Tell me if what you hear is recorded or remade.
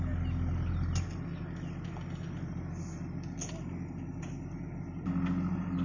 recorded